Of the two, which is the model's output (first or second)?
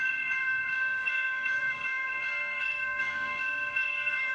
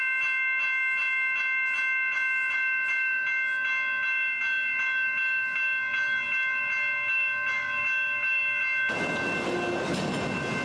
first